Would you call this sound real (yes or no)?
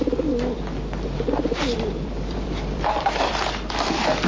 no